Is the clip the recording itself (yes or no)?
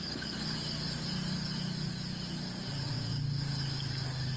yes